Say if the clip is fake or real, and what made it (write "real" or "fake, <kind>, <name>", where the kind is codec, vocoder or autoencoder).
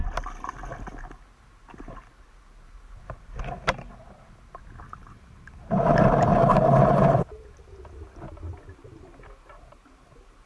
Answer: real